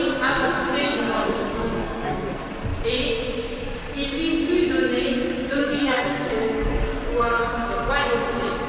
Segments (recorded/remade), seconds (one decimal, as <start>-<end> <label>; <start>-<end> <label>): 0.0-0.8 recorded; 0.8-2.5 remade; 2.5-5.6 recorded; 5.6-7.7 remade; 7.7-8.7 recorded